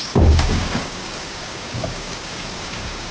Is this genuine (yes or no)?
no